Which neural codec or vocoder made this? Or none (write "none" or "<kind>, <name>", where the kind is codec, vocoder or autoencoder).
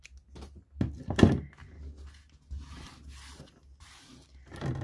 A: none